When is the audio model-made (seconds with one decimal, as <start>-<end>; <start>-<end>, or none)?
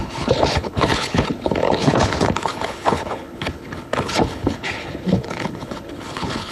0.0-6.5